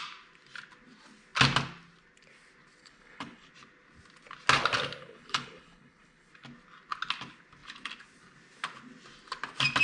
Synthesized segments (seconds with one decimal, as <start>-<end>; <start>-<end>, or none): 2.8-3.5; 5.0-6.3